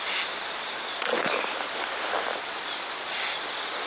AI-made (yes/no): no